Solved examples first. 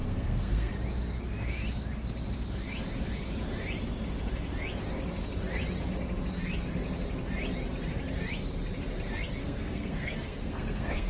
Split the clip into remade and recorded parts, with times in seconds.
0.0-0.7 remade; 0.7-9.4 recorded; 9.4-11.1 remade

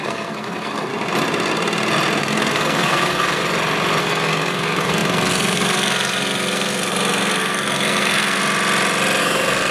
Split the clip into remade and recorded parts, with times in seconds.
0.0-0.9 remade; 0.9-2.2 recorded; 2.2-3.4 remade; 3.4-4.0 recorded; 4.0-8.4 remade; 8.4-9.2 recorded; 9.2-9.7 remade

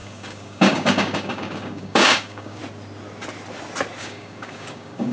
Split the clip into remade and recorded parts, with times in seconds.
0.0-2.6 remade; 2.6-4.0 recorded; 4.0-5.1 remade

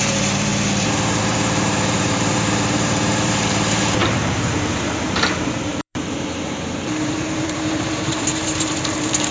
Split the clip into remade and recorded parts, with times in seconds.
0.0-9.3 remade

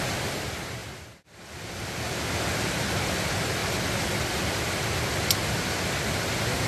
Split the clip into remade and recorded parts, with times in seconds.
0.0-6.7 recorded